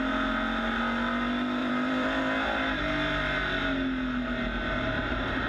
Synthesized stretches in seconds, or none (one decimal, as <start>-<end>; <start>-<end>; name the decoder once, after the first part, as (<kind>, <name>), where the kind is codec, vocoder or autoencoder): 1.6-2.2 (vocoder, BigVGAN v2)